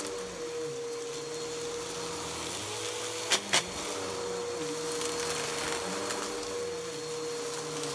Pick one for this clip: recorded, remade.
recorded